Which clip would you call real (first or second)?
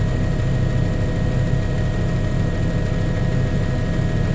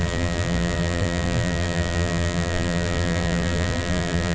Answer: first